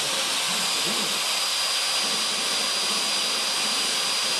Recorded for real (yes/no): yes